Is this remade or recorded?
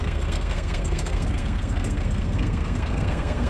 remade